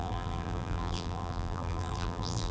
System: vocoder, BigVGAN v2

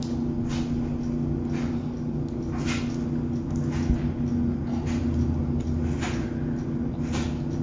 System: none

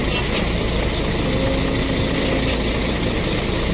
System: none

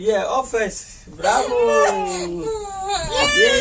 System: none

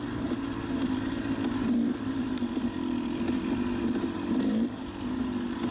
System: none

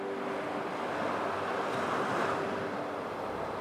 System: none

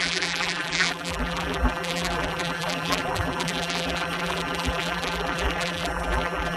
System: vocoder, BigVGAN v2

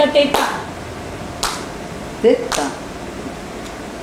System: none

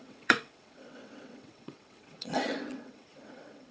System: vocoder, WaveNeXt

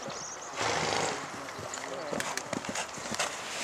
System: none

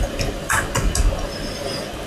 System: vocoder, BigVGAN v2